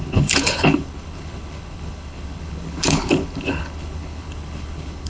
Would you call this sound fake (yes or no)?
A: yes